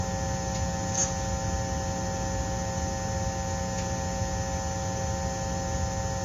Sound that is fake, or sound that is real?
fake